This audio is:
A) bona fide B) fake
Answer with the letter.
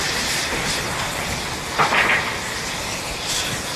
A